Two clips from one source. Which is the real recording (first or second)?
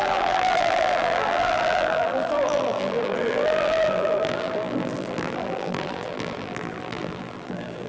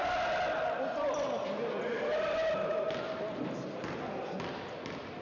second